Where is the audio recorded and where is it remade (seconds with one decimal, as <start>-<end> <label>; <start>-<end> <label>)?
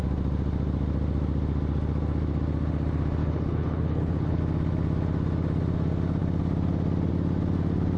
0.0-3.2 recorded; 3.2-4.4 remade; 4.4-8.0 recorded